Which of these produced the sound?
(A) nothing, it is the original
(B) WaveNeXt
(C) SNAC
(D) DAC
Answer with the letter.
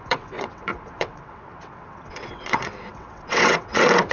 B